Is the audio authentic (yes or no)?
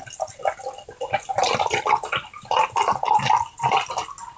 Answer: yes